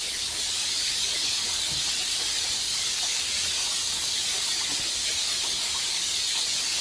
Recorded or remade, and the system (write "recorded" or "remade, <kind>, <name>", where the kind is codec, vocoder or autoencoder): remade, codec, DAC